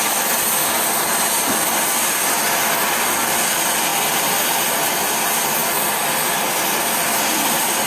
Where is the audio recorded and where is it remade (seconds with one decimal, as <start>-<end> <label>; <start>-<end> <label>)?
0.0-7.9 recorded